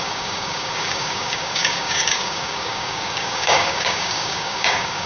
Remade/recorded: remade